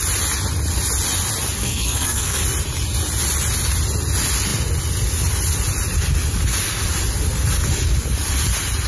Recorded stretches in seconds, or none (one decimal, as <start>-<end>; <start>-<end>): 0.0-1.6; 2.4-8.9